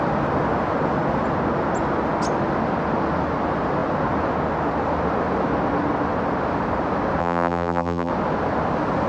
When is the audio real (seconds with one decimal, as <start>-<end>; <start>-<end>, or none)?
0.0-7.2; 8.1-9.1